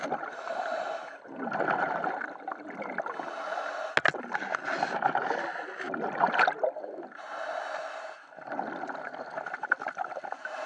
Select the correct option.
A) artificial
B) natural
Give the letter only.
B